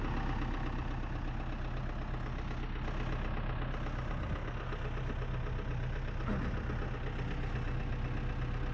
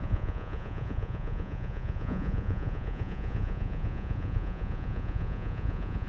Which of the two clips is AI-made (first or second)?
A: second